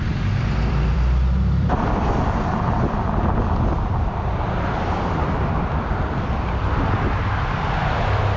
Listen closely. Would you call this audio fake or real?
fake